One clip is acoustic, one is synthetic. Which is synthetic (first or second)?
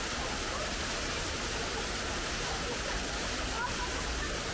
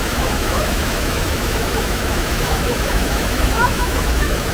second